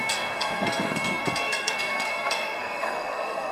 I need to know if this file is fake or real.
fake